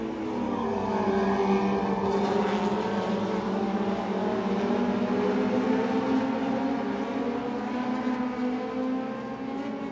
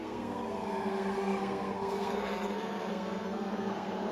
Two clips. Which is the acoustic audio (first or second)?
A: first